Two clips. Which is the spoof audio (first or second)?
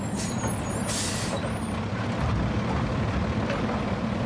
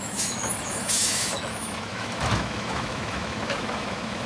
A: second